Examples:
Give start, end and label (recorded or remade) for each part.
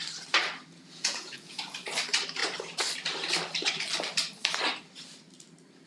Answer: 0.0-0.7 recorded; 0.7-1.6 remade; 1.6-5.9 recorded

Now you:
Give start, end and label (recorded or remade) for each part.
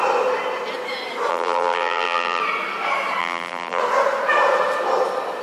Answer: 0.0-1.3 recorded; 1.3-2.4 remade; 2.4-3.2 recorded; 3.2-3.8 remade; 3.8-5.4 recorded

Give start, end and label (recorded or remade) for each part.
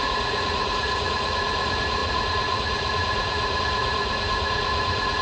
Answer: 0.0-5.2 remade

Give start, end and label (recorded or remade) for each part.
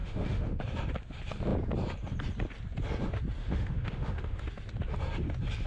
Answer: 0.0-0.6 remade; 0.6-3.4 recorded; 3.4-4.4 remade; 4.4-5.7 recorded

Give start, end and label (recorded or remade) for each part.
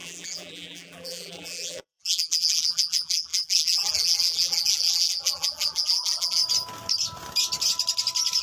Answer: 0.0-6.4 remade; 6.4-8.4 recorded